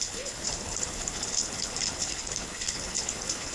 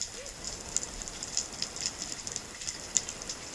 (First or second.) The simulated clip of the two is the first